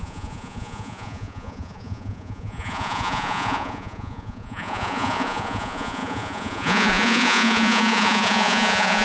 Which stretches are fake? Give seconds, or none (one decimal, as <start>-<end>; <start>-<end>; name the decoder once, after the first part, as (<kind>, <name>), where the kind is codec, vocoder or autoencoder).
0.0-9.0 (vocoder, Vocos)